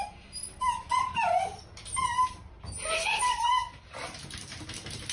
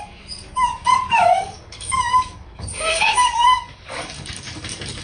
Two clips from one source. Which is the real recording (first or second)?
first